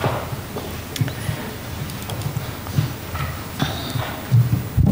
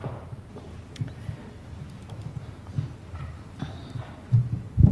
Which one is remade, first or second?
second